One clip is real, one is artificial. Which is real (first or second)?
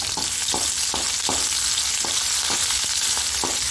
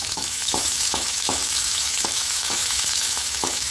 first